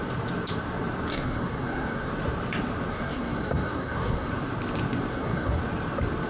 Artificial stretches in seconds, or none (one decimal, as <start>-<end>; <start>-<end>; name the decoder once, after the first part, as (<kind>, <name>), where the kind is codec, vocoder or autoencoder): 1.1-2.1 (codec, SNAC); 2.9-4.3; 5.1-5.6